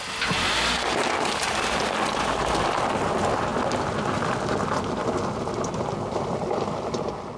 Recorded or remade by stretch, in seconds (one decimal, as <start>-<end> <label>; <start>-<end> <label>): 0.0-7.4 recorded